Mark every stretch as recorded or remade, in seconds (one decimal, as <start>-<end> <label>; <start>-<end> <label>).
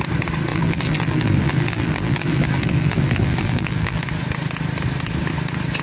0.0-0.5 recorded; 0.5-4.0 remade; 4.0-5.8 recorded